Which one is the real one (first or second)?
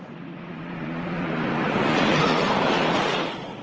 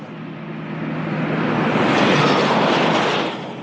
second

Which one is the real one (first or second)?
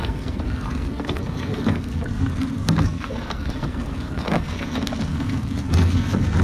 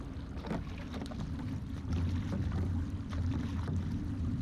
second